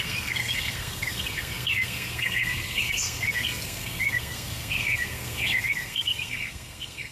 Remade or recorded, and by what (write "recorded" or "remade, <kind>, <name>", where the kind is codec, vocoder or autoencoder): remade, codec, SNAC